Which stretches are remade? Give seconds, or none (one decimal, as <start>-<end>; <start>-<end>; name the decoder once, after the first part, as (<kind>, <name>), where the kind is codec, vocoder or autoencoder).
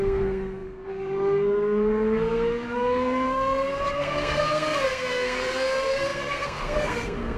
0.0-7.4 (codec, SNAC)